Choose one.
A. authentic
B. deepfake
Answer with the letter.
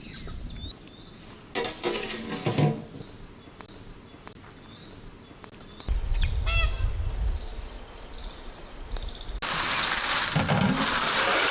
A